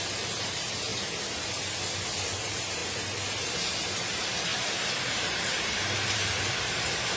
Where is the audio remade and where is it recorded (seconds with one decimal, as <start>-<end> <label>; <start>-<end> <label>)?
0.0-0.9 remade; 0.9-2.4 recorded; 2.4-2.8 remade; 2.8-3.5 recorded; 3.5-4.5 remade; 4.5-5.1 recorded; 5.1-7.2 remade